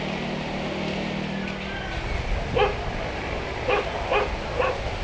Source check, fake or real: real